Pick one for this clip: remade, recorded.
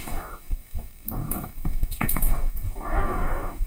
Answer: remade